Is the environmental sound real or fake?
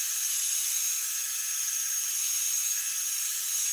real